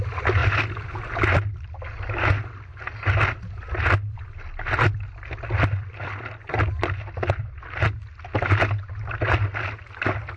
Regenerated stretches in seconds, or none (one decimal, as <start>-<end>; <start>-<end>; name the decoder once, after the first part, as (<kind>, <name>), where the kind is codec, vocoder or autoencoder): none